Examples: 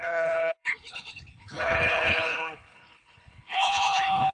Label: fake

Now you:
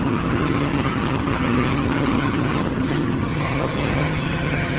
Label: fake